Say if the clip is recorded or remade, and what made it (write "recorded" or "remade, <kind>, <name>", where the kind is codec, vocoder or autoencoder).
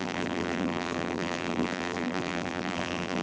remade, vocoder, BigVGAN v2